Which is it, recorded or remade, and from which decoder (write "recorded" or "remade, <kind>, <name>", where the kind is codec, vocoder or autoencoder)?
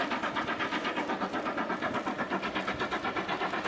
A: recorded